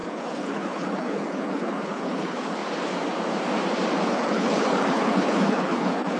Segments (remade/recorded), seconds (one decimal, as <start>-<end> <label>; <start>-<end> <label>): 0.0-2.6 remade; 2.6-4.1 recorded; 4.1-6.2 remade